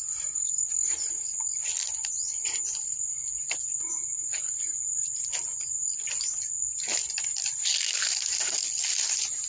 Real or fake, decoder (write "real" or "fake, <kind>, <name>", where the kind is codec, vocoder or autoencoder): real